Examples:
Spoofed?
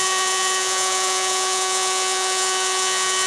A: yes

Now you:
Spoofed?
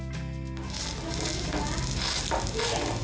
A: no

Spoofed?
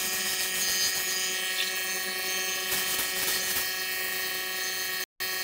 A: no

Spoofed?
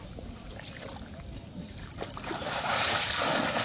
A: no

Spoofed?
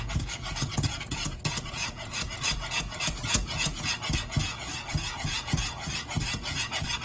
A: yes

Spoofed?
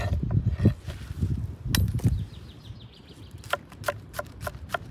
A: no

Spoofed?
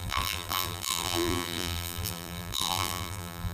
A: yes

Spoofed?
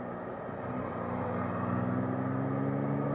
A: no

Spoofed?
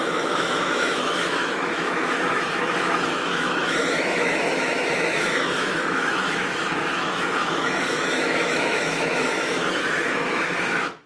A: yes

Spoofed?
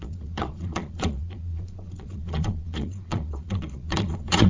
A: yes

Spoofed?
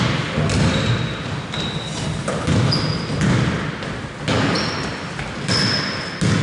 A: no